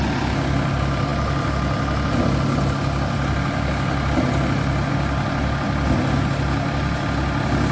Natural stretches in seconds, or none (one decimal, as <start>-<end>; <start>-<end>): 0.0-7.7